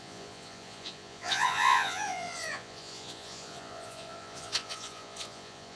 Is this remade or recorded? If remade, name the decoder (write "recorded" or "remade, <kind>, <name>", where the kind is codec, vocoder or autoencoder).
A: remade, vocoder, Vocos